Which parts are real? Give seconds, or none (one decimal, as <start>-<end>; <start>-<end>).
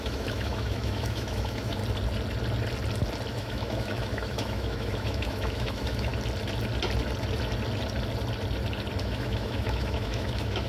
1.8-3.3; 6.1-9.0